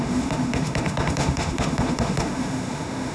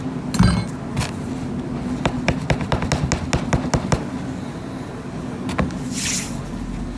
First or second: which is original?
second